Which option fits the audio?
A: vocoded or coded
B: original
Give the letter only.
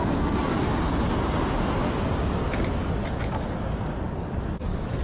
B